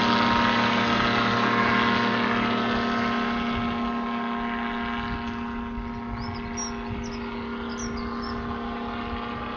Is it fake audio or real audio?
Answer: real